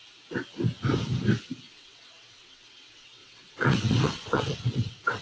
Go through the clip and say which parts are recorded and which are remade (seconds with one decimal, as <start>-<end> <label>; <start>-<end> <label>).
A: 0.0-1.7 recorded; 1.7-5.2 remade